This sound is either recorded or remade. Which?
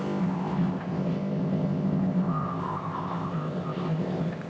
remade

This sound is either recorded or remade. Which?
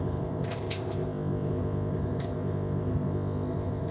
remade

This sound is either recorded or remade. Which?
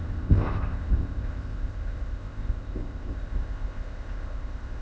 remade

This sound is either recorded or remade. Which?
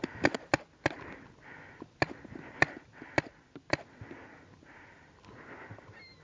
recorded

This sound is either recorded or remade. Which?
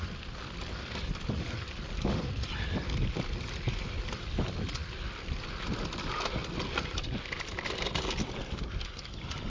recorded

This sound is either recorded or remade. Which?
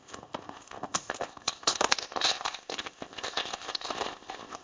remade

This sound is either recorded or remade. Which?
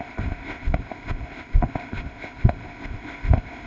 remade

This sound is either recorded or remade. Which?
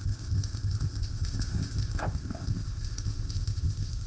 remade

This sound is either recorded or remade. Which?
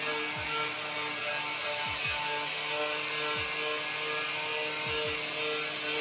recorded